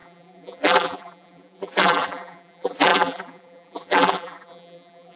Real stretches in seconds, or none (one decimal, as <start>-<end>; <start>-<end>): none